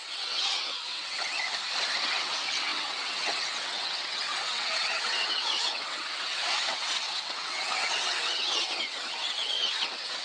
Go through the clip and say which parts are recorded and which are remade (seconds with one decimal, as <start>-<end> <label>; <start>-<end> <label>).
0.0-1.4 remade; 1.4-2.0 recorded; 2.0-10.2 remade